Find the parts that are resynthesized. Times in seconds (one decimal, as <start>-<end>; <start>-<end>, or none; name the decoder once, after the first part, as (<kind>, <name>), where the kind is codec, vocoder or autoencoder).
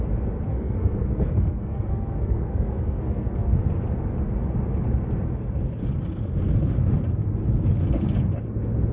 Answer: 0.5-3.6 (codec, SNAC)